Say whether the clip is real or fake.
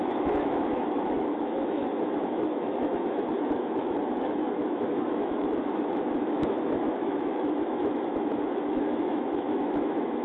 fake